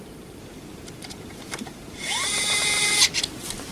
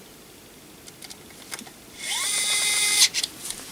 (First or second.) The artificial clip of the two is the first